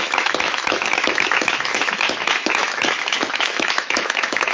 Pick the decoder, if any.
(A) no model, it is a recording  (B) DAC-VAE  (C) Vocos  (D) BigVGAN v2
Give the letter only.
B